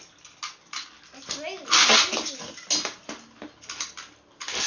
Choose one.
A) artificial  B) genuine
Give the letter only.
B